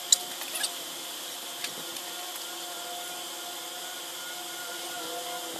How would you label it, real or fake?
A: real